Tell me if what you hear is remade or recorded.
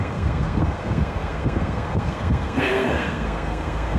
remade